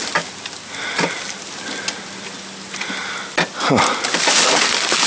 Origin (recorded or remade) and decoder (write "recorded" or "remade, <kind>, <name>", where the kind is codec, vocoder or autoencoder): recorded